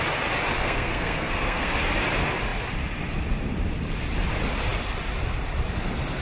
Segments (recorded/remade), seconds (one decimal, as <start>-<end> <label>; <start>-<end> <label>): 0.0-0.6 recorded; 0.6-1.7 remade; 1.7-6.2 recorded